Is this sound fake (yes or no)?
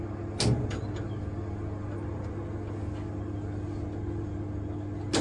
no